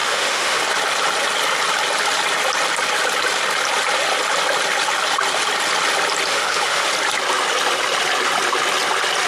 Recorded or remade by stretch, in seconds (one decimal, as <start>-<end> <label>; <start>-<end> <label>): 0.0-0.6 remade; 0.6-6.3 recorded; 6.3-6.9 remade; 6.9-9.3 recorded